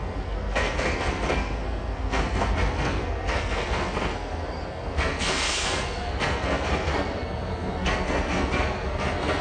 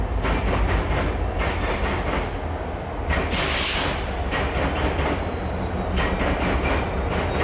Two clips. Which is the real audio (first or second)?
second